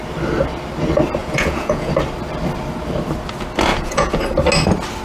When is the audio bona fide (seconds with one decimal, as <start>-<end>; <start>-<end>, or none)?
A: 0.0-1.2; 1.9-3.7; 4.2-5.0